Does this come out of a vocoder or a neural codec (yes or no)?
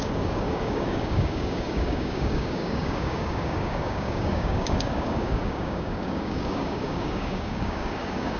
yes